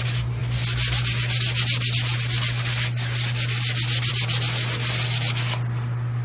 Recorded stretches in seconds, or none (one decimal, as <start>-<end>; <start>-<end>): 0.0-6.2